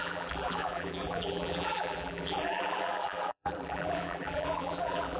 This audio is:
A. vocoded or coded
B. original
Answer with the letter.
A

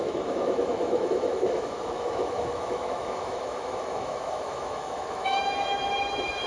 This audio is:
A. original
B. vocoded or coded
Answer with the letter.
B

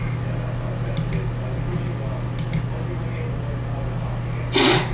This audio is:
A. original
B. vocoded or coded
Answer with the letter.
A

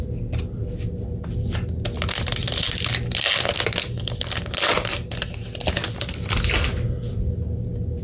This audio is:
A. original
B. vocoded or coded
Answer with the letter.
A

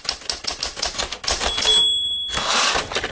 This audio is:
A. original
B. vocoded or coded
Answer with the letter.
A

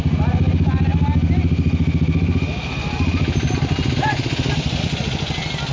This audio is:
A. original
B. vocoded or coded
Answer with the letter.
A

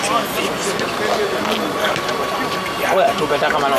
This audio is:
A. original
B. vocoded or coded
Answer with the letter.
A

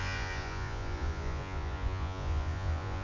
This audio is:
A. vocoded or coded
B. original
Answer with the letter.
A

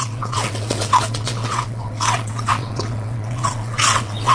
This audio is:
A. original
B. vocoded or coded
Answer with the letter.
B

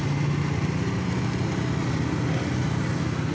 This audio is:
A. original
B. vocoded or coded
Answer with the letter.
A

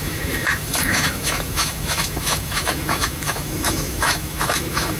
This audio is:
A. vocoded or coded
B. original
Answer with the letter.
A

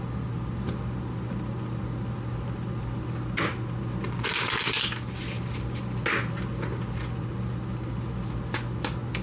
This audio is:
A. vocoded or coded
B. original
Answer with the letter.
B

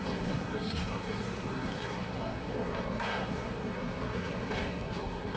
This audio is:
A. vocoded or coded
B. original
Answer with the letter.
A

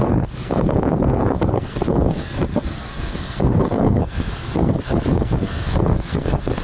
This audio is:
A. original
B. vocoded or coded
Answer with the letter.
B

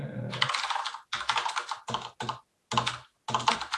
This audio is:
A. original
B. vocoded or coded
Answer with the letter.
A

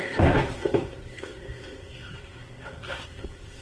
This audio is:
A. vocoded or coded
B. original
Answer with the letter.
A